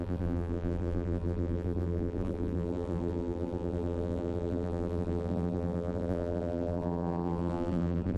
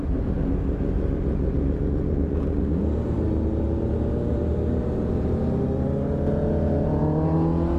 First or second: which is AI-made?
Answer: first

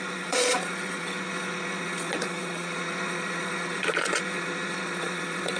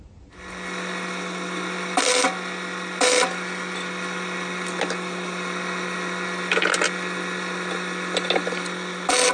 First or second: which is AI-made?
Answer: first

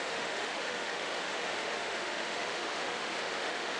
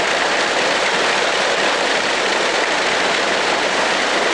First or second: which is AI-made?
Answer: first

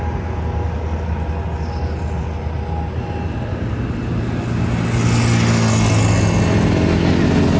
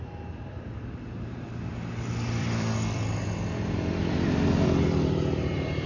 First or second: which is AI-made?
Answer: second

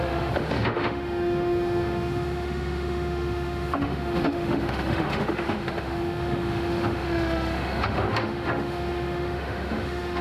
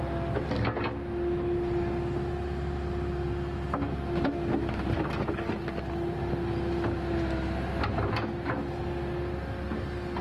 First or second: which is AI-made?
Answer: first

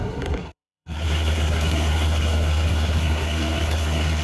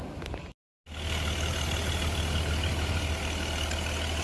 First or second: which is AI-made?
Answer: first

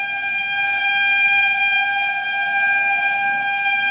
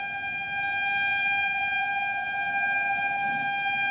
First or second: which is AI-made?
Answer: first